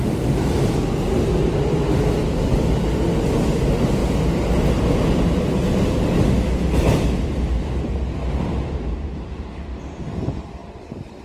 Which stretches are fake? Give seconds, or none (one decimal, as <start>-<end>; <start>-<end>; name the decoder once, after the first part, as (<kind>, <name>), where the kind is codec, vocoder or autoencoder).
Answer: none